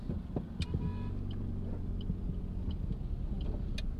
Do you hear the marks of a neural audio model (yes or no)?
no